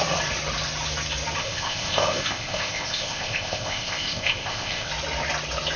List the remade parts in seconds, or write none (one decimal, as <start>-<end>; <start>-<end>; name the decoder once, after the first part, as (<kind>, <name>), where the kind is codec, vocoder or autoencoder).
1.4-4.9 (codec, ZipCodec)